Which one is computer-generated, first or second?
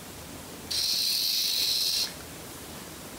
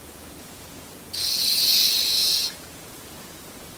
second